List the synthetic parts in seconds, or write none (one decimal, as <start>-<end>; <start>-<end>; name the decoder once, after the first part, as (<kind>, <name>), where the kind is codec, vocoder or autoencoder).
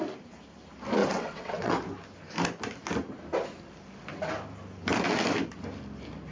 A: 1.0-1.7 (vocoder, WaveNeXt)